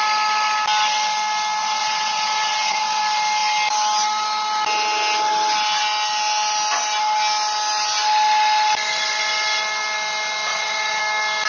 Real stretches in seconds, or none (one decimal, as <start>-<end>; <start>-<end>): 0.0-1.6; 3.0-10.5; 11.0-11.5